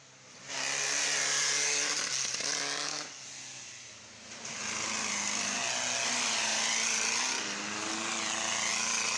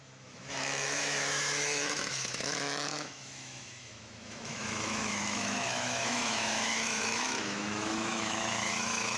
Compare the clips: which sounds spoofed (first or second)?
second